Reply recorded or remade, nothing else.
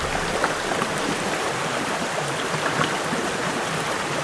recorded